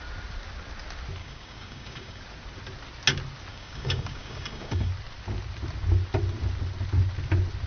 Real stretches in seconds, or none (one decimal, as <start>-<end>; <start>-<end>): 0.0-1.2; 2.2-3.5; 4.9-7.7